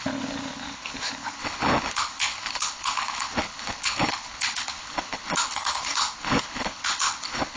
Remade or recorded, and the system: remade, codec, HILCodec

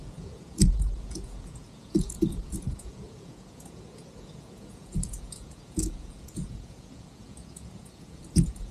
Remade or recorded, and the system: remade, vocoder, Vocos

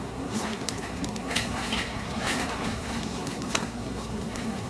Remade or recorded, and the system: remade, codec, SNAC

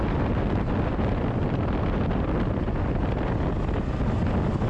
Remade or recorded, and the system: recorded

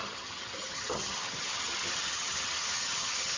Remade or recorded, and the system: remade, vocoder, HiFi-GAN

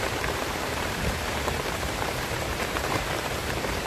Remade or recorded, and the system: remade, vocoder, BigVGAN v2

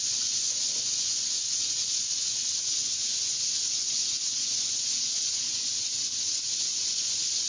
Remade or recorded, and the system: remade, vocoder, Vocos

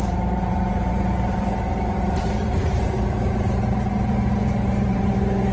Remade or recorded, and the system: remade, vocoder, BigVGAN v2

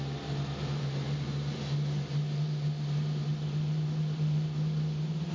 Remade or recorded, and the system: recorded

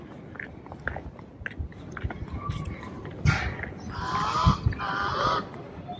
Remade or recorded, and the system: recorded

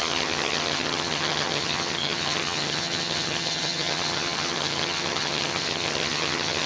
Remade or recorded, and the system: remade, vocoder, HiFi-GAN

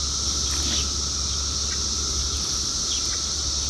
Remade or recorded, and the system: recorded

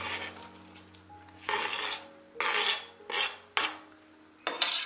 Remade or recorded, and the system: recorded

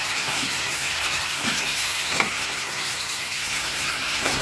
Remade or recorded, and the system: remade, codec, SNAC